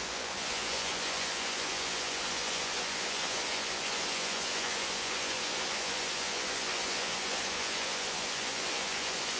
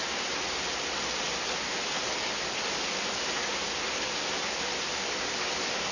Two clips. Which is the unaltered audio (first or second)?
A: second